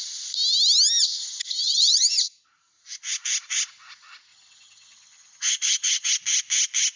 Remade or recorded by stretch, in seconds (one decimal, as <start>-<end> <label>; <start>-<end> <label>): 0.0-1.2 recorded; 1.2-2.1 remade; 2.1-4.3 recorded; 4.3-6.1 remade; 6.1-7.0 recorded